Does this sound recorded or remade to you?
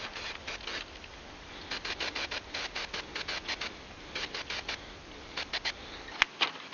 recorded